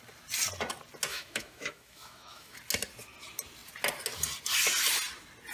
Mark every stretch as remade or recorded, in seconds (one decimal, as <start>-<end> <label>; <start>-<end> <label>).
0.0-1.1 recorded; 1.1-2.6 remade; 2.6-5.5 recorded